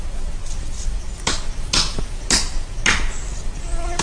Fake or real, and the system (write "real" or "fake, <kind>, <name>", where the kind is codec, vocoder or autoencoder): real